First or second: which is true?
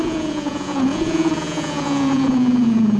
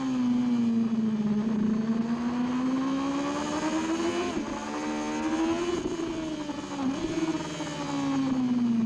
second